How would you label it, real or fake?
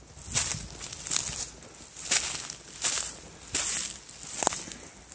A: real